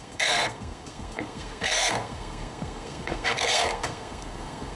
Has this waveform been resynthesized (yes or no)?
yes